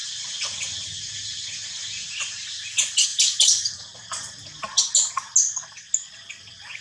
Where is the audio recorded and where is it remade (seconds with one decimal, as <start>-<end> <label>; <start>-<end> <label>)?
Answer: 0.0-1.8 recorded; 1.8-2.6 remade; 2.6-6.8 recorded